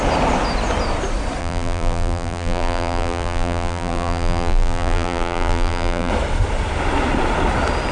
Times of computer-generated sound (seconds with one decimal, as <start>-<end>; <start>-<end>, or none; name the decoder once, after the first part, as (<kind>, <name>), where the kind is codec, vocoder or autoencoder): 1.4-6.1 (vocoder, BigVGAN v2)